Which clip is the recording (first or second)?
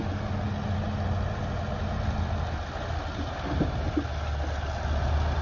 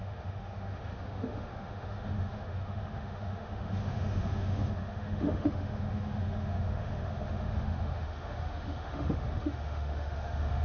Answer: first